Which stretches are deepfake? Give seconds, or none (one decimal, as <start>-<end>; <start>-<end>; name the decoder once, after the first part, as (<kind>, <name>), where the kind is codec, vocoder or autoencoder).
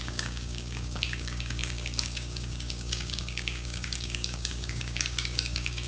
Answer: 0.0-5.9 (codec, DAC)